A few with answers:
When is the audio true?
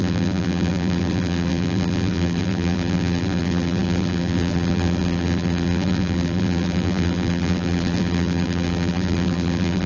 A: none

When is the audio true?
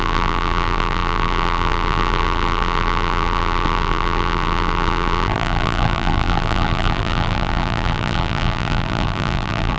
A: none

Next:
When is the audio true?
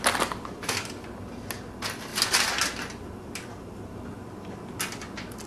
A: 0.0-5.5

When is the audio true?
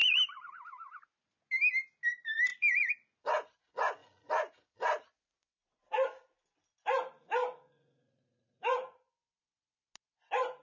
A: 0.5-2.5; 3.6-10.6